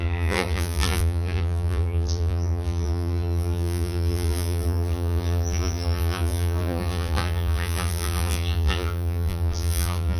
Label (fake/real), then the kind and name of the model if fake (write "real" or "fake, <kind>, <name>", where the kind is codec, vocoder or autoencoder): fake, vocoder, BigVGAN v2